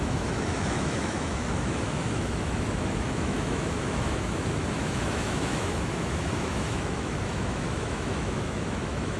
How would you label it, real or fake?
fake